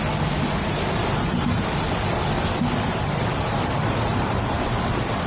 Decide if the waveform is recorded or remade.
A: recorded